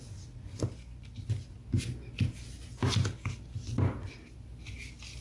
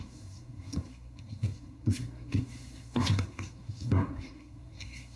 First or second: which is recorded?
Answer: first